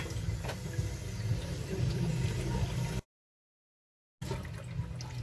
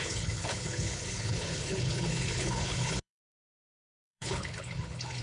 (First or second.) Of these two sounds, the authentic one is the first